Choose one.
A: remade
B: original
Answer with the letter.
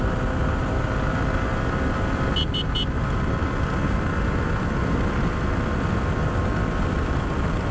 B